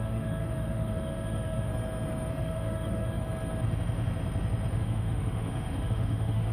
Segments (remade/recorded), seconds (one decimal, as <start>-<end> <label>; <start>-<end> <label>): 0.0-1.7 remade; 1.7-2.3 recorded; 2.3-3.2 remade; 3.2-4.7 recorded; 4.7-6.5 remade